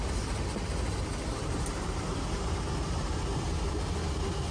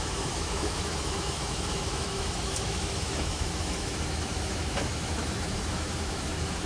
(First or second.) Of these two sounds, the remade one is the second